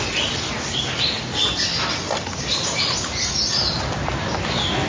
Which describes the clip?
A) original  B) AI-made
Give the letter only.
A